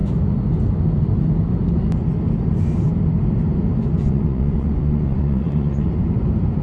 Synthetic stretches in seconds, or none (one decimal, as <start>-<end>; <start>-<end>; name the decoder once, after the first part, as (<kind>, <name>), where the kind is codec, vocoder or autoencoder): 4.0-5.9 (vocoder, Vocos)